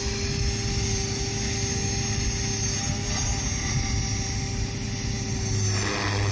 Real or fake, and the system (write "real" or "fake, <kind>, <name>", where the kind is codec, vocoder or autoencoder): real